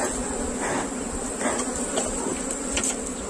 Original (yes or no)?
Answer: yes